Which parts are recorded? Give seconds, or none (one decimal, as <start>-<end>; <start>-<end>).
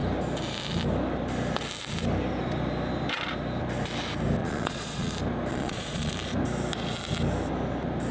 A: 0.0-4.4; 5.1-5.5; 6.1-8.1